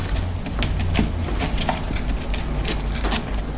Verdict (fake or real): real